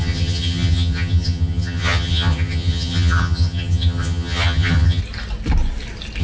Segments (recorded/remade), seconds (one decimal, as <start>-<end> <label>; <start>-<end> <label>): 0.0-5.0 remade; 5.0-6.2 recorded